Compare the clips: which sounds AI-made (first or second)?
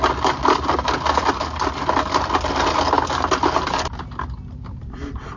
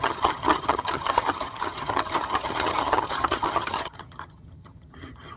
second